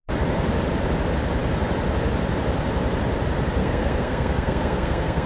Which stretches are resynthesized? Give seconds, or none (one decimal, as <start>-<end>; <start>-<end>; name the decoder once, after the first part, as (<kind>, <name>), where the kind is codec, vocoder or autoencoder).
3.6-5.3 (codec, SNAC)